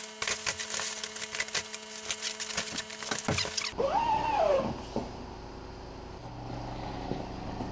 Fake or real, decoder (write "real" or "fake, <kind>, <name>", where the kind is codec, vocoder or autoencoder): real